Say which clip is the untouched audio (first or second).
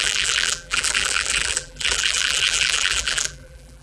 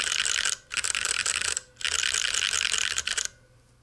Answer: second